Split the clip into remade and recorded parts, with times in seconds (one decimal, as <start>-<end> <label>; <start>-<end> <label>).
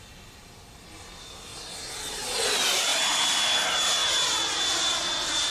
0.0-5.5 recorded